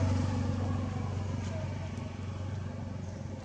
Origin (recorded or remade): recorded